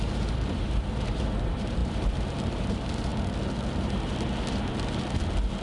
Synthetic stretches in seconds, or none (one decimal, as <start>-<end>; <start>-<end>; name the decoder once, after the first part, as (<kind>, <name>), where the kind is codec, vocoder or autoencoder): 0.0-3.1 (vocoder, BigVGAN v2)